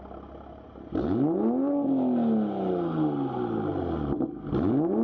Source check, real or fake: real